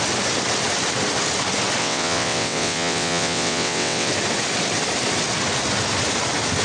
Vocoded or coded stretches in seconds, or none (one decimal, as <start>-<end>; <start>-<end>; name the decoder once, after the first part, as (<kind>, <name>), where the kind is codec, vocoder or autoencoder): 1.8-4.1 (vocoder, WaveNeXt)